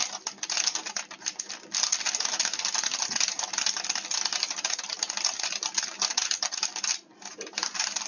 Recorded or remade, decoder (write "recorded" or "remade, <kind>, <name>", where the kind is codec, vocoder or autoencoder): recorded